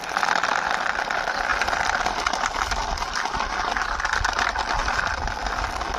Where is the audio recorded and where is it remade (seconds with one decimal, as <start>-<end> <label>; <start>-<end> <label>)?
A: 0.0-1.5 recorded; 1.5-2.4 remade; 2.4-4.8 recorded; 4.8-5.3 remade; 5.3-6.0 recorded